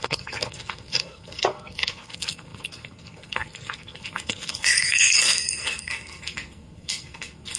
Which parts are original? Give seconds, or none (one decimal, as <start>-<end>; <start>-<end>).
none